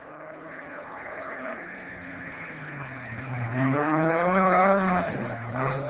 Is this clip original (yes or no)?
no